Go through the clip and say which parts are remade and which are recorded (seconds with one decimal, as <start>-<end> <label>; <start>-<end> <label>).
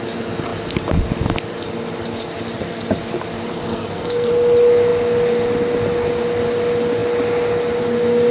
0.0-3.7 recorded; 3.7-4.3 remade; 4.3-8.3 recorded